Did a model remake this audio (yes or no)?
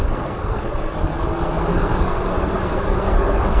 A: yes